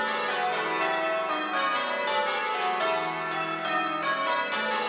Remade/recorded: recorded